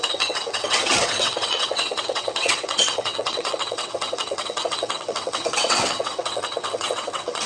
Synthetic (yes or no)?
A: yes